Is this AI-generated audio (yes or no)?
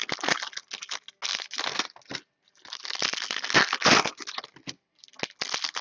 no